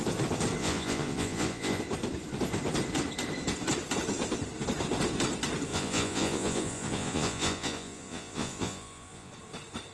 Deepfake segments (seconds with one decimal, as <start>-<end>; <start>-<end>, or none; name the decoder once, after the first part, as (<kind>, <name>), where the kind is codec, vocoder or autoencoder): 0.6-1.8 (vocoder, Vocos); 5.7-9.3